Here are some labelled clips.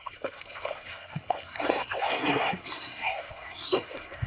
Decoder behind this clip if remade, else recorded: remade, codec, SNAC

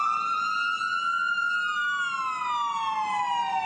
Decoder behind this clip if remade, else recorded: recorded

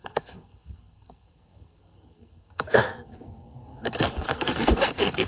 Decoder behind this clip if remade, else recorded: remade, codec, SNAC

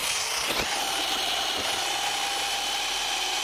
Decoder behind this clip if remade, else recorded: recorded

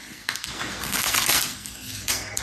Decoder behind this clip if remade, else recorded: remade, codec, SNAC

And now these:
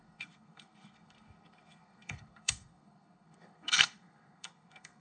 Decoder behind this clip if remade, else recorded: remade, codec, SNAC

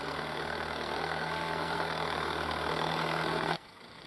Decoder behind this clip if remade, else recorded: remade, codec, SNAC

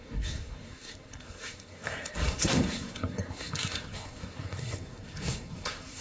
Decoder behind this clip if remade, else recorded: remade, codec, SNAC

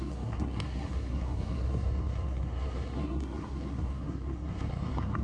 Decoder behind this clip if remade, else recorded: remade, codec, SNAC